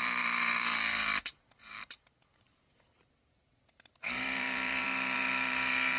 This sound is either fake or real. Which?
fake